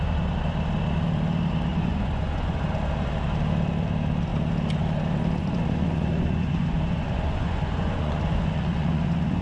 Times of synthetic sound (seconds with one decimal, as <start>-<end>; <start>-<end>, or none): 1.7-2.6; 5.4-9.4